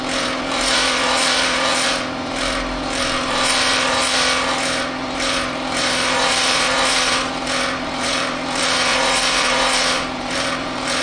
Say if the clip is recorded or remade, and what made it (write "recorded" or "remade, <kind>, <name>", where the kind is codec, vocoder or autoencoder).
remade, vocoder, BigVGAN v2